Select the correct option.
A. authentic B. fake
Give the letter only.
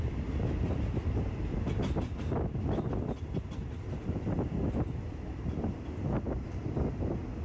A